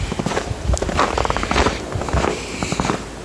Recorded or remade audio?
recorded